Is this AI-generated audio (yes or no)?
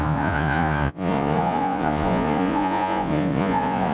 yes